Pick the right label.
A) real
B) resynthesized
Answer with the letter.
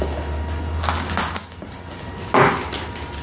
A